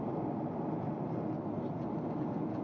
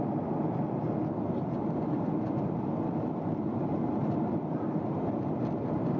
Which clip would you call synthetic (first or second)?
second